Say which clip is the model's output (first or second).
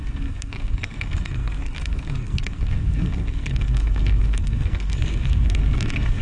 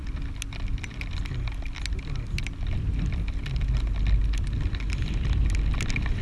first